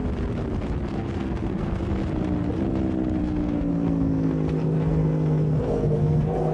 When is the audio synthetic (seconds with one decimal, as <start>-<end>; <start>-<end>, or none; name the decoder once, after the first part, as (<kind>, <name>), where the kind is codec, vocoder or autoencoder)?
0.9-2.0 (codec, SNAC); 3.2-6.5